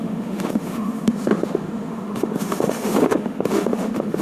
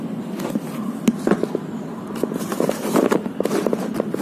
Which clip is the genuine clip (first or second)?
second